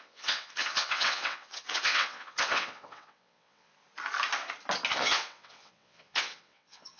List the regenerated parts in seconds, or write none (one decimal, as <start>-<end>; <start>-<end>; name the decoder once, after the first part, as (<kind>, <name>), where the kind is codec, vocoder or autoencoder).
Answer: 0.0-3.7 (vocoder, WaveNeXt); 4.9-7.0